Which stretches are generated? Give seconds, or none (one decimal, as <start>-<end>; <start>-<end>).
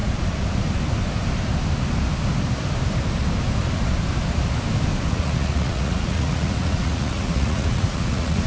5.1-8.5